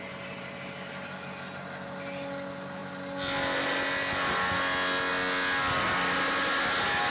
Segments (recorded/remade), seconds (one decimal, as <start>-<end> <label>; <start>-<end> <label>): 0.0-7.1 recorded